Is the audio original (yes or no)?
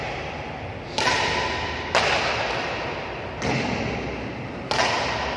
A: yes